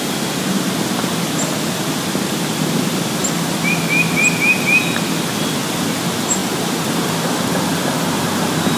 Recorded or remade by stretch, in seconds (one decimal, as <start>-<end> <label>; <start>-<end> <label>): 0.0-8.8 recorded